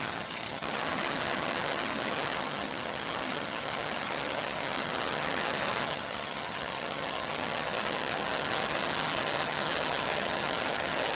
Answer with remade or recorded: remade